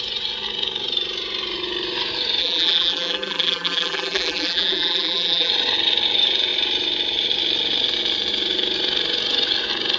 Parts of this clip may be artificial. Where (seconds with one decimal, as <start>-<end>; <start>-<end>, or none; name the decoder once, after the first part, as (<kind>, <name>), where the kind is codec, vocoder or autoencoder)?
2.4-5.5 (vocoder, BigVGAN v2)